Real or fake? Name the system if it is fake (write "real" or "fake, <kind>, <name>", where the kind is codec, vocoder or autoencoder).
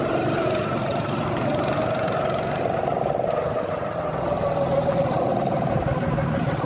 fake, vocoder, BigVGAN v2